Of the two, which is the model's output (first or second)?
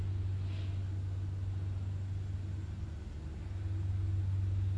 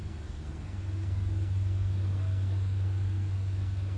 second